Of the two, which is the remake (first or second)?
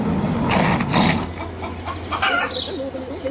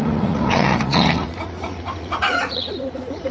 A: second